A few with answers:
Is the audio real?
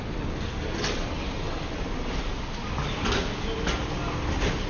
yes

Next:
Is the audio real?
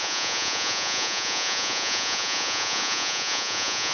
no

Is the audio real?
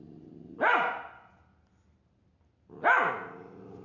yes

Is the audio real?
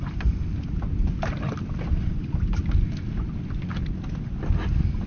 yes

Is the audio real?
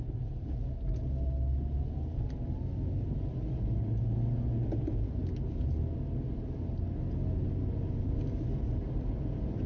yes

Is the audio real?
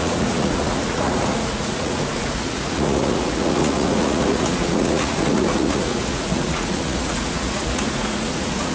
no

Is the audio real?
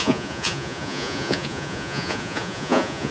no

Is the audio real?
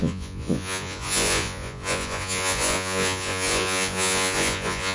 no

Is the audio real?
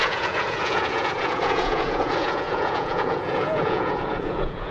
no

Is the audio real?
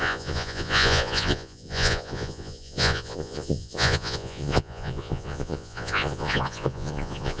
no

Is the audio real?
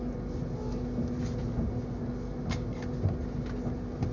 yes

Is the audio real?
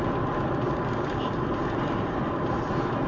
yes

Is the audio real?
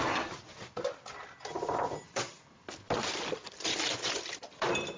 yes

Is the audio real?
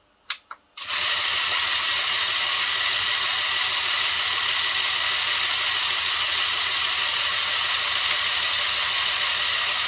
yes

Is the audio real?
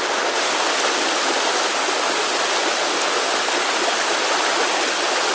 yes